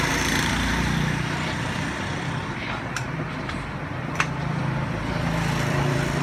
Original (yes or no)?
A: no